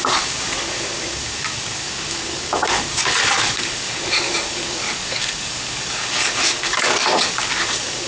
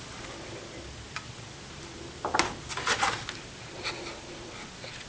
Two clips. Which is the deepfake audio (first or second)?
first